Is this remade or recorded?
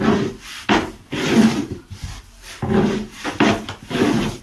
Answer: remade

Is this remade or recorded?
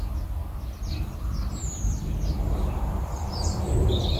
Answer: recorded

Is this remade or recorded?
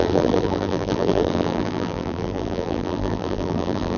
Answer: remade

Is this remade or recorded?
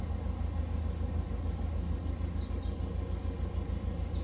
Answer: recorded